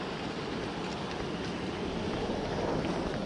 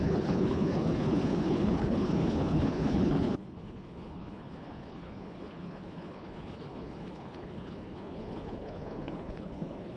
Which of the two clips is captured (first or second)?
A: first